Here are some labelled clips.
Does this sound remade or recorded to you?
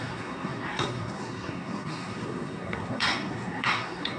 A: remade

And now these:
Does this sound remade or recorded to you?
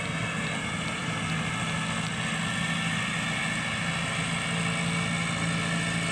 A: recorded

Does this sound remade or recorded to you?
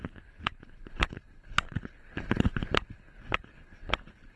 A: remade